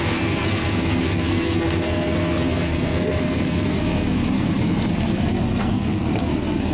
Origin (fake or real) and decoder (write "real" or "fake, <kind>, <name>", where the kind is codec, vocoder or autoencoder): fake, codec, SNAC